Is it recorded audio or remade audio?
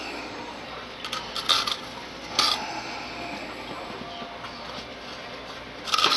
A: recorded